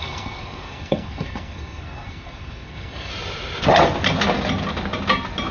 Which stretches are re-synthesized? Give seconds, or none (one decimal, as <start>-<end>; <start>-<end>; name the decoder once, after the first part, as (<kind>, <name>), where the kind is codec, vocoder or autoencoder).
0.0-3.1 (codec, SNAC)